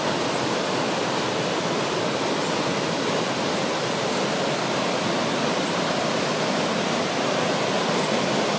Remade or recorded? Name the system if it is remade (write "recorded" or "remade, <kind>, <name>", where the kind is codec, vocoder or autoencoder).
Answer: remade, vocoder, BigVGAN v2